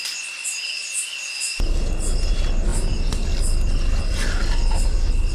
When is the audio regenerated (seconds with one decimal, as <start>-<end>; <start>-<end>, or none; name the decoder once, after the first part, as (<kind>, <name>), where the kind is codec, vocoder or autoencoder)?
none